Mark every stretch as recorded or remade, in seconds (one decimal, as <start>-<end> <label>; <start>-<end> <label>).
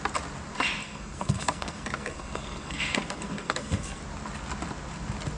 0.0-0.8 recorded; 0.8-4.0 remade; 4.0-5.4 recorded